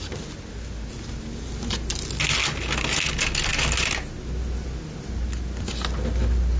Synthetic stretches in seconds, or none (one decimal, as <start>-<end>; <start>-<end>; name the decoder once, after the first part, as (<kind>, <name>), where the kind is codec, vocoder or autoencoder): none

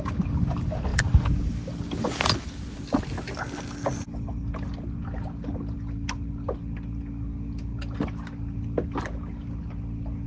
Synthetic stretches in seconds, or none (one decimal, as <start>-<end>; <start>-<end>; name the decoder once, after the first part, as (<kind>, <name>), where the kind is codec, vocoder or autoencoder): none

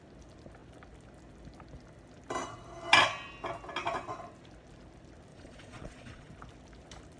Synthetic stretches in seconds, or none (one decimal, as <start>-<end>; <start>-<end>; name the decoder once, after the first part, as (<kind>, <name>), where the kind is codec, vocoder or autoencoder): 5.3-6.3 (vocoder, Vocos)

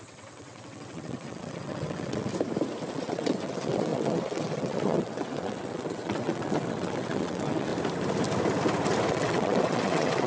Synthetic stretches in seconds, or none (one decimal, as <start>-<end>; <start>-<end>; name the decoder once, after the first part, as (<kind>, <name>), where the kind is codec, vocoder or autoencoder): 0.0-2.3 (vocoder, WaveNeXt); 2.9-7.7; 9.1-10.3

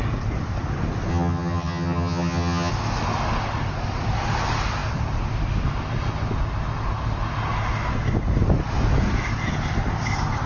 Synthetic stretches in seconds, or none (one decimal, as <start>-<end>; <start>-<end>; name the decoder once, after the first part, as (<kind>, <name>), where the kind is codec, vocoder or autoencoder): 1.1-2.7 (vocoder, HiFi-GAN)

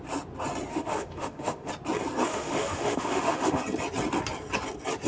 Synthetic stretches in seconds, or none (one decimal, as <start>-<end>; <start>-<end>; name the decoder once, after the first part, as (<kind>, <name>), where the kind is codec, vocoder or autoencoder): 0.7-1.7 (autoencoder, DAC-VAE); 2.3-3.6